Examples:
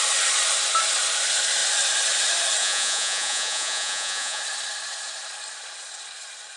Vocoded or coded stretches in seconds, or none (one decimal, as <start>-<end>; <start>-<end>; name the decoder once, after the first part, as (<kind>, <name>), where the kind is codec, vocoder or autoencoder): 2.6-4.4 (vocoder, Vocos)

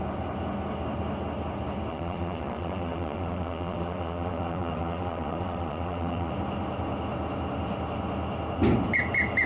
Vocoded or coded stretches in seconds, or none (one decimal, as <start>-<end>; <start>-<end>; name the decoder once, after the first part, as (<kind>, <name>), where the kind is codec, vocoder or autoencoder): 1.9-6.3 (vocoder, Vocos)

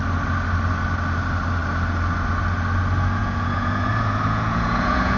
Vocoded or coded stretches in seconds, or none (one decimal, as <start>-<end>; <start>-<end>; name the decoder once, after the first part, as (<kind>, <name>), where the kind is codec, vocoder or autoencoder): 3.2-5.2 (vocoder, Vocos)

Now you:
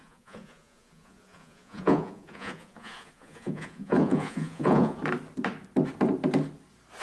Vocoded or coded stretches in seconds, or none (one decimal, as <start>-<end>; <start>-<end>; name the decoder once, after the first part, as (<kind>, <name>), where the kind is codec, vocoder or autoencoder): 0.0-5.0 (vocoder, Vocos)

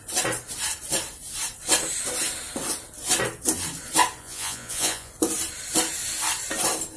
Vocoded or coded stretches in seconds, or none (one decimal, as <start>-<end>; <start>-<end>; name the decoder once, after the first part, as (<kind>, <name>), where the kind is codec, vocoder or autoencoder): 4.2-5.1 (vocoder, Vocos)

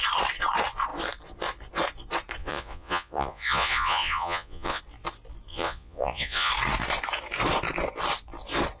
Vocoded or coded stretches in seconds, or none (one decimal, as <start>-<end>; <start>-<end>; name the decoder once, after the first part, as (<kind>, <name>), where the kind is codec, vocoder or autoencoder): 2.4-4.8 (vocoder, Vocos); 5.5-6.5